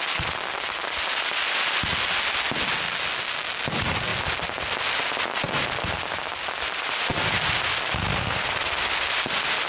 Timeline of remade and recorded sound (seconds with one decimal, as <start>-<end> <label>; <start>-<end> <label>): 0.0-9.7 recorded